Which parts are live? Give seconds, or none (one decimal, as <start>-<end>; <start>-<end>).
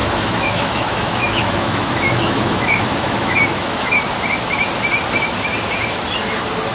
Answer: 4.0-6.7